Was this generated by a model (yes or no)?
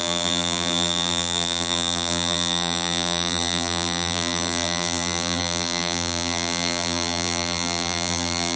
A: yes